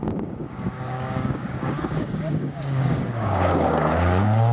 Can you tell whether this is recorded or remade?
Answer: remade